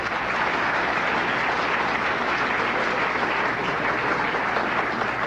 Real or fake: real